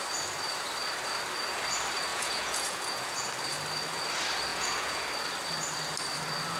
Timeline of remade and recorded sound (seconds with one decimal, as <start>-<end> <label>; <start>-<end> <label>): 0.0-2.1 recorded; 2.1-3.3 remade; 3.3-4.5 recorded; 4.5-5.0 remade; 5.0-6.6 recorded